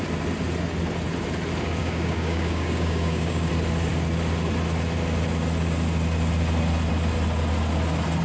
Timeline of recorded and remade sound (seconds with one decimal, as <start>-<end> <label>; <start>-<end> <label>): 0.0-1.8 recorded; 1.8-3.5 remade; 3.5-8.2 recorded